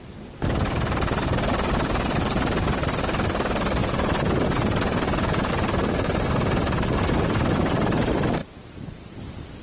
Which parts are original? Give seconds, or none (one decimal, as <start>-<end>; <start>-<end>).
0.0-3.8; 5.5-8.4; 9.2-9.6